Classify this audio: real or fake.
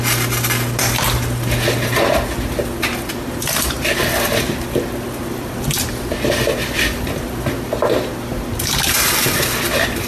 real